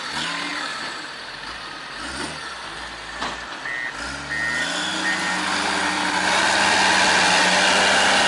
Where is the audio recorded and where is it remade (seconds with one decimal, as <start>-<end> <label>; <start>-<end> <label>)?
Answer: 0.0-0.5 recorded; 0.5-2.8 remade; 2.8-8.3 recorded